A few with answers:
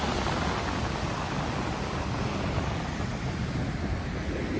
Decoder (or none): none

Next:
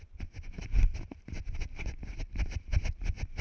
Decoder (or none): none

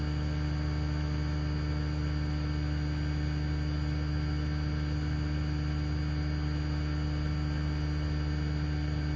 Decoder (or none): none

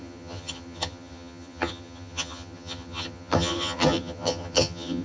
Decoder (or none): vocoder, HiFi-GAN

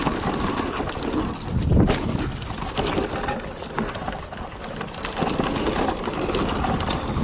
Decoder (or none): none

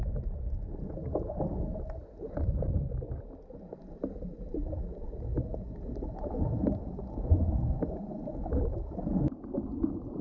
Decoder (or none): none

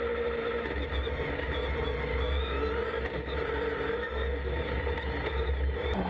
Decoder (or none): none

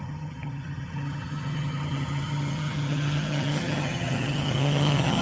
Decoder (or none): vocoder, HiFi-GAN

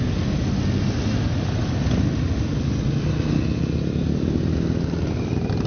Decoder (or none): none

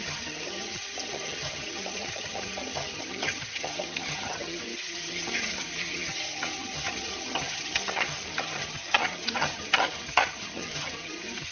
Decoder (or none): vocoder, HiFi-GAN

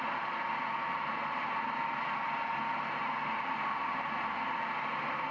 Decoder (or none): none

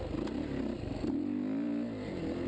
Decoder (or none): none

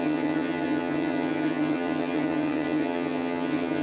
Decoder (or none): vocoder, HiFi-GAN